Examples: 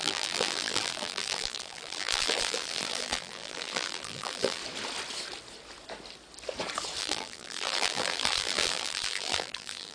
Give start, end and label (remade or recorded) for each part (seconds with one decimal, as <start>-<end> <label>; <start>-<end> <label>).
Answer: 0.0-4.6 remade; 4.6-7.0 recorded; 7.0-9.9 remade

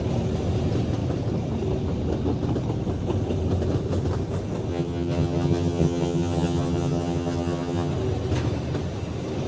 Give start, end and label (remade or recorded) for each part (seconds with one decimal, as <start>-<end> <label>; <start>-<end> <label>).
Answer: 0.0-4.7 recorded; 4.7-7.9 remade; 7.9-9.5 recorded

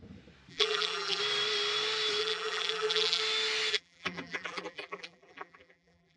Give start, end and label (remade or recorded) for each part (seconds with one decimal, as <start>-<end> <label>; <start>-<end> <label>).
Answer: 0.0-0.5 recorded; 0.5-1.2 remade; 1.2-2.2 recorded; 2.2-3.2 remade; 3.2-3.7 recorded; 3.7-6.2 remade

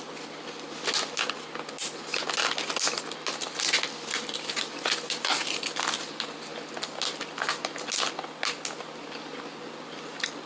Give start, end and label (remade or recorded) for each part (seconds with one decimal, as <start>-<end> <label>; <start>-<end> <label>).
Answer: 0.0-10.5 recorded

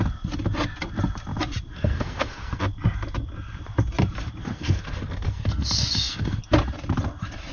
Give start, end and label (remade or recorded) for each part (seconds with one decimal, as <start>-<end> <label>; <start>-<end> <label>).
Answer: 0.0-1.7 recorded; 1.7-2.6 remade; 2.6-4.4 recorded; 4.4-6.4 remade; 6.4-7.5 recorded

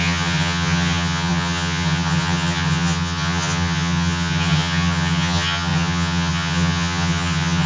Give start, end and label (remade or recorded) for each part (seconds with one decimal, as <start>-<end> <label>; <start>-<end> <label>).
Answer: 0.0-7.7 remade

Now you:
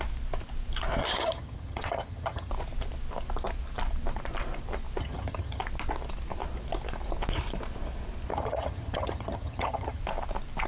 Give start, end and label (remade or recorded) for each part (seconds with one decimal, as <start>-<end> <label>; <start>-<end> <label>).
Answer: 0.0-1.0 recorded; 1.0-2.5 remade; 2.5-5.0 recorded; 5.0-5.6 remade; 5.6-8.3 recorded; 8.3-10.0 remade; 10.0-10.7 recorded